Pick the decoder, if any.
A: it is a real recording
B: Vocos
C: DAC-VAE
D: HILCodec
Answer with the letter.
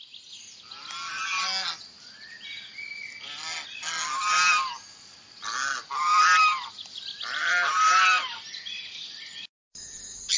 A